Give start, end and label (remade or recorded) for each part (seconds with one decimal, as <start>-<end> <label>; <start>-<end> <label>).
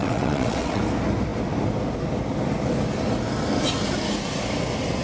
0.0-0.8 remade; 0.8-5.0 recorded